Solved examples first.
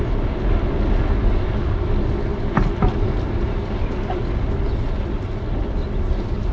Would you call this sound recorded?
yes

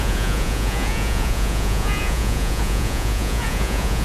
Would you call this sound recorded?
no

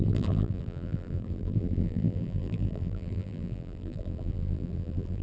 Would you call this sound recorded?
no